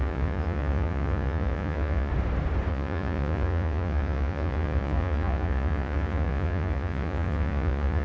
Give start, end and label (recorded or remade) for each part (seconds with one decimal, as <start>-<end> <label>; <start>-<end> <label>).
0.0-2.1 remade; 2.1-2.7 recorded; 2.7-8.0 remade